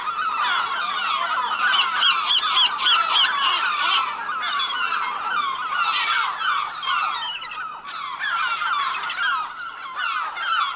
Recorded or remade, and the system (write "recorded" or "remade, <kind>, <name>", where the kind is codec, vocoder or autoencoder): recorded